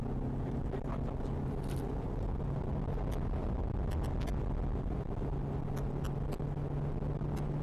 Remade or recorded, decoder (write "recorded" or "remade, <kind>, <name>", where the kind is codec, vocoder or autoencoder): recorded